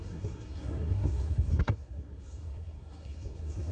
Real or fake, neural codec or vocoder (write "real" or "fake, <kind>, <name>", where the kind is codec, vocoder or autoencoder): fake, codec, SNAC